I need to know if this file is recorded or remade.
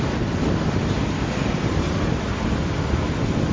recorded